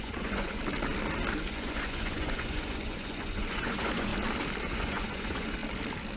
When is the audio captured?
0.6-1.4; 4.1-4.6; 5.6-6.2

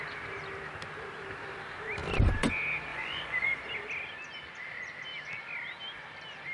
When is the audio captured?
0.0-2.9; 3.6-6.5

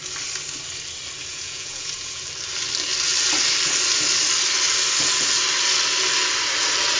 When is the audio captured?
0.0-1.3; 2.2-7.0